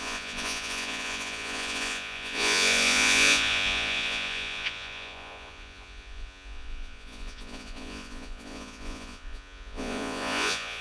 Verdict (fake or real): fake